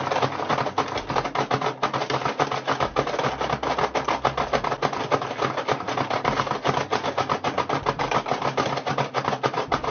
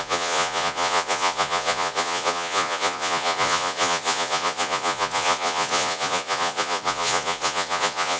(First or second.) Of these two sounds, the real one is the first